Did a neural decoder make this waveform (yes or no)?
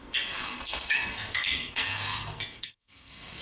yes